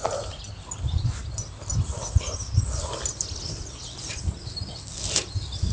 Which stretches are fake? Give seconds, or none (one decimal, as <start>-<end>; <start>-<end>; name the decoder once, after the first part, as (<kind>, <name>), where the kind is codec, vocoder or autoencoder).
none